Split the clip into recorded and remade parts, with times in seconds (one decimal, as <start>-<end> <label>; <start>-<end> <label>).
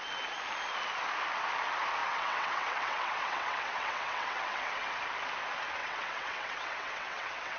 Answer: 0.0-2.0 recorded; 2.0-4.9 remade; 4.9-5.8 recorded; 5.8-7.6 remade